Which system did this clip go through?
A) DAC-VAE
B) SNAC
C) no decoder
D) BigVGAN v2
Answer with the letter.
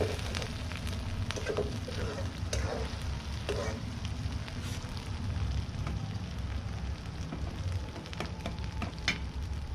C